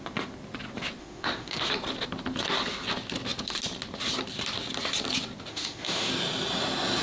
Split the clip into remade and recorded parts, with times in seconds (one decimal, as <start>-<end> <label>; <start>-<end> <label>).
0.0-1.0 recorded; 1.0-1.7 remade; 1.7-5.5 recorded; 5.5-6.1 remade; 6.1-7.0 recorded